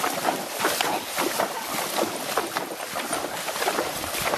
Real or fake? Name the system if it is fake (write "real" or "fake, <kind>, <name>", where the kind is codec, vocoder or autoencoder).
fake, vocoder, BigVGAN v2